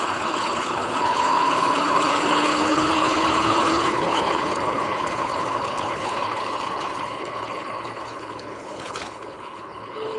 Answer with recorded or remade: remade